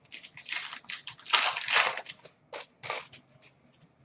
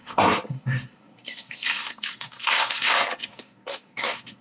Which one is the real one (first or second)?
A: first